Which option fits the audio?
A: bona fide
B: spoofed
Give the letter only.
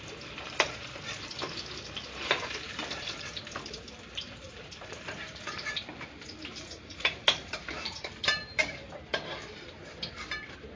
B